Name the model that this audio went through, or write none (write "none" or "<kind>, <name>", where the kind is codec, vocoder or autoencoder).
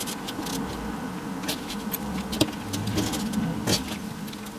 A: none